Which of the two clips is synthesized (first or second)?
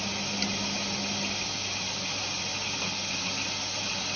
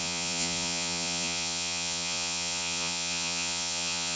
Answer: second